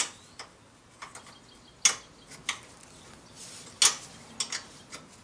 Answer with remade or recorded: recorded